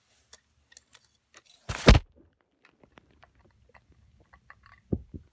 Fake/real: real